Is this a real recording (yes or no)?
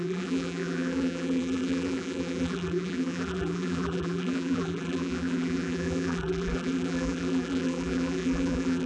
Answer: no